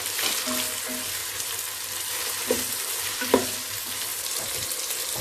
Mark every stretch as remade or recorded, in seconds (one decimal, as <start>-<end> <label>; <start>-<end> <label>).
0.0-1.2 recorded; 1.2-3.0 remade; 3.0-4.1 recorded; 4.1-4.8 remade; 4.8-5.2 recorded